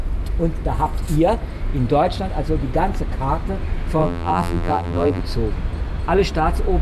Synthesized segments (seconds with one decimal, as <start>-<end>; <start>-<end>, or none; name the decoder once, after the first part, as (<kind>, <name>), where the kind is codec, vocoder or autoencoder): 4.0-5.2 (vocoder, BigVGAN v2)